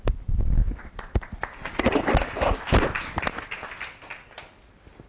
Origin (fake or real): real